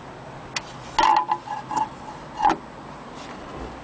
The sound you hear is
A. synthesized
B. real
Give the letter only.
B